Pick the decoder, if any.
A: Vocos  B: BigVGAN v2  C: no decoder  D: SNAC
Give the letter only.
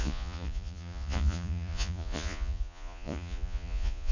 A